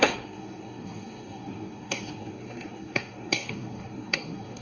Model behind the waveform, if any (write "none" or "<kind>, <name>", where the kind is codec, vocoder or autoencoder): codec, SNAC